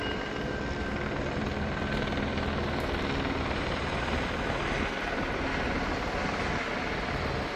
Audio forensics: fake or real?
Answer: real